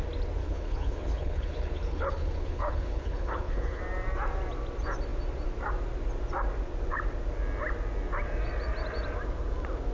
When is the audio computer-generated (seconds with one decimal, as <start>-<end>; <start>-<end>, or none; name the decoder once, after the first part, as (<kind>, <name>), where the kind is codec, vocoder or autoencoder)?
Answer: 0.4-3.8 (codec, HILCodec)